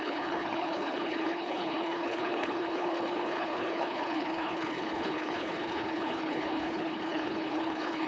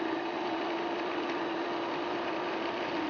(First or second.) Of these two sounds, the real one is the second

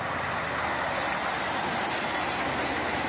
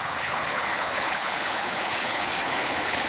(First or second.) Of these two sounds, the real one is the first